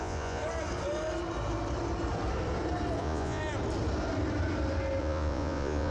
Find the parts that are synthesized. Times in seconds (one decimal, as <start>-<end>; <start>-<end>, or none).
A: 0.0-0.4; 3.0-3.4; 5.0-5.9